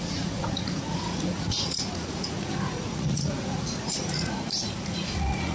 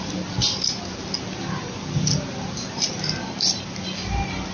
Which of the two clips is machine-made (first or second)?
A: first